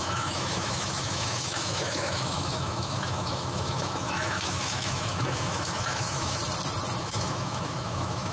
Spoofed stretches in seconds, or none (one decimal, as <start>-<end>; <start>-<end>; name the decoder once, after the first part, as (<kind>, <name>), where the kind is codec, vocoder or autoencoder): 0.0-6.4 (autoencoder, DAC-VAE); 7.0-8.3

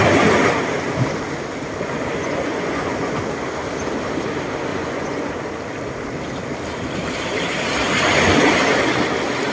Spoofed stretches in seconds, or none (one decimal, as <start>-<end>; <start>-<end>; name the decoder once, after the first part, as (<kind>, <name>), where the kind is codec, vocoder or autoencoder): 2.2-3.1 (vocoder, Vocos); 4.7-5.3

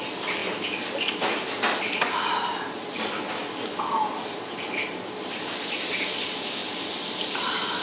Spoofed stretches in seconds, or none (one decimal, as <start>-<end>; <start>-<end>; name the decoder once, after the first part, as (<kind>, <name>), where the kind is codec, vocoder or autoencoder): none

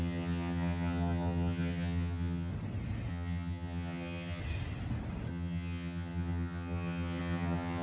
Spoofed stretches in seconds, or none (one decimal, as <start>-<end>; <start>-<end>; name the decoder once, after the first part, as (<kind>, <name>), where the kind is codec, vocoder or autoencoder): 0.0-2.5 (vocoder, HiFi-GAN); 3.1-4.4; 5.3-7.8

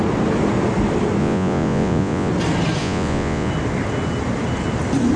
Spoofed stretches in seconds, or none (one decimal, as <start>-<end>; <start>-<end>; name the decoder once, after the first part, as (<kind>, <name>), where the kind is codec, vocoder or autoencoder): 1.2-2.3 (vocoder, Vocos); 2.8-3.5

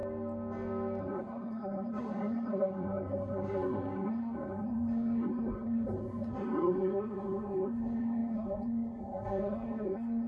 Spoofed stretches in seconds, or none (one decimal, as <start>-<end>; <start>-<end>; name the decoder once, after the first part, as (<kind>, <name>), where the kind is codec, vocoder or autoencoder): 1.0-10.3 (codec, SNAC)